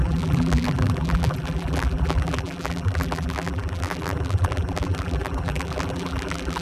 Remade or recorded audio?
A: remade